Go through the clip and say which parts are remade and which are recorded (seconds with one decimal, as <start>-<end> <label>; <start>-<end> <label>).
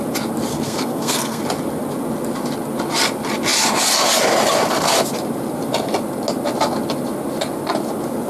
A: 0.0-0.5 recorded; 0.5-1.4 remade; 1.4-8.3 recorded